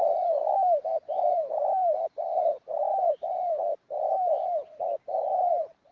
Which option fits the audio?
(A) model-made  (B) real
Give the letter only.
A